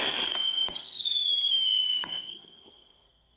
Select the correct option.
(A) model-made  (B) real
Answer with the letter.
A